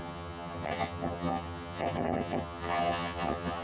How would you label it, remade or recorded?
remade